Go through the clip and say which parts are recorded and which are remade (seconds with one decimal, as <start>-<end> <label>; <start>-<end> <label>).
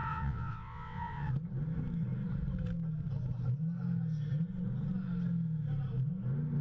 0.0-1.3 remade; 1.3-6.6 recorded